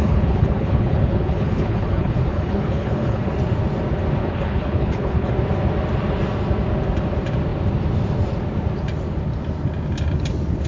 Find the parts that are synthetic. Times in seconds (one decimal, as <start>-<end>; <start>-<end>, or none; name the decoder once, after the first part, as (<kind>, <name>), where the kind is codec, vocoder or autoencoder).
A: 0.0-3.3 (codec, HILCodec); 4.2-5.3